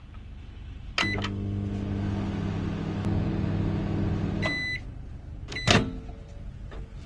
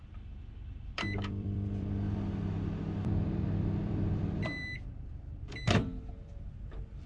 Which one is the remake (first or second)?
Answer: second